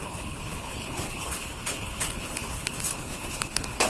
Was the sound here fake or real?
fake